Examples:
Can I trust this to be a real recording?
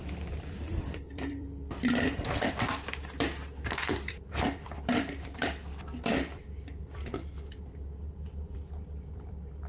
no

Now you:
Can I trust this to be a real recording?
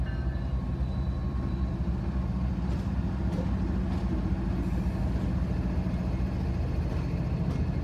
yes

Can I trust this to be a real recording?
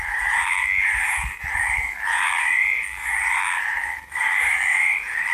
no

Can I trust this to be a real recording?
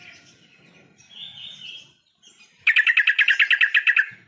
yes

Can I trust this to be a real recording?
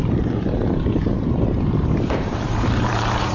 no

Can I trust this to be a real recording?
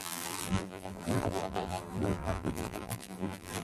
no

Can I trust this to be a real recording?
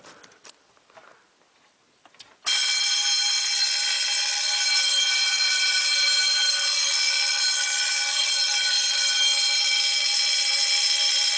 yes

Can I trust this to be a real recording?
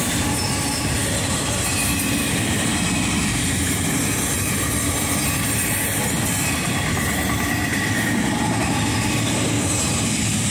yes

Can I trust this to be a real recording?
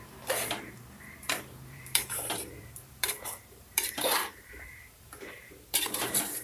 no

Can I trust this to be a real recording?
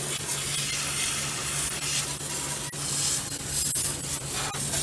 yes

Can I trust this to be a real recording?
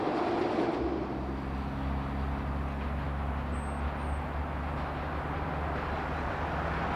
yes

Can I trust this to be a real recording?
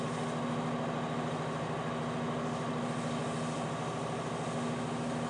yes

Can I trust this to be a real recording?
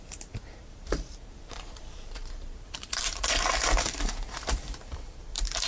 no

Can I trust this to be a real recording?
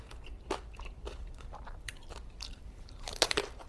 no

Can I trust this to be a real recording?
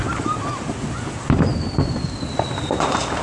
no